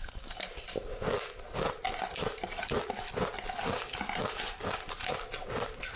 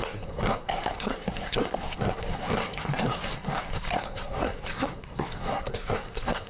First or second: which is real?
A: first